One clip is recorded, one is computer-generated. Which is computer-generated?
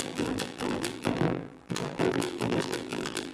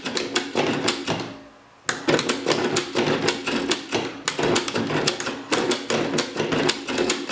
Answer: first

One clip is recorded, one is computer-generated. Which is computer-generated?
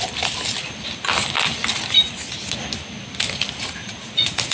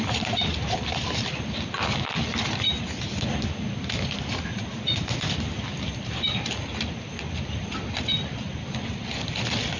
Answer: second